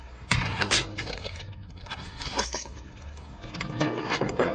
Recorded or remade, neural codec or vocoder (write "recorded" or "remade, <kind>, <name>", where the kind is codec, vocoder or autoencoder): remade, codec, SNAC